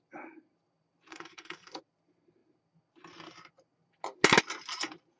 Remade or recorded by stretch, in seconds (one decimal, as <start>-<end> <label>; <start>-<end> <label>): 0.0-1.1 recorded; 1.1-1.8 remade; 1.8-5.2 recorded